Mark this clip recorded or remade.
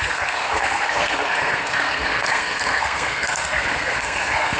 remade